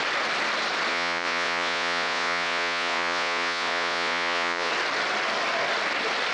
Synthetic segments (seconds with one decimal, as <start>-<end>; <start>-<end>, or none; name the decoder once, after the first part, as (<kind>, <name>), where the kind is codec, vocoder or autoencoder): 0.9-4.7 (vocoder, Vocos)